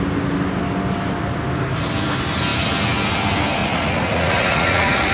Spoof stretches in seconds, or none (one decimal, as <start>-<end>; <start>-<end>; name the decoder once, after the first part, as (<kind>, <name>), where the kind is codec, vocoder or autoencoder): 3.6-5.1 (vocoder, Vocos)